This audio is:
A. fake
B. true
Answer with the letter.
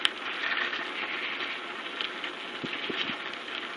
B